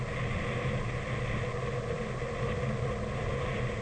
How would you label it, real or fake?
real